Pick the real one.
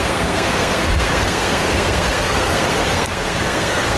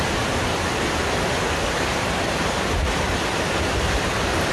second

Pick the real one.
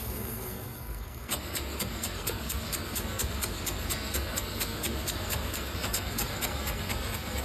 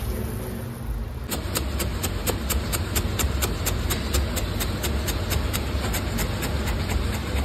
second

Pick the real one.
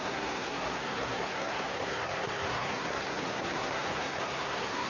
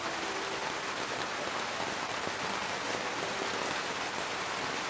second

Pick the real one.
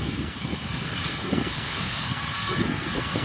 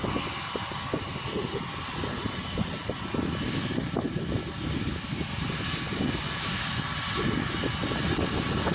second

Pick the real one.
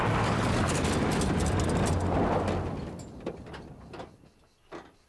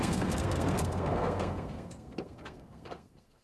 first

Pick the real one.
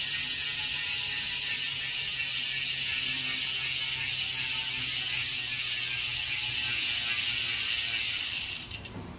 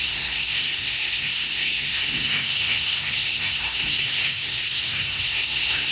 first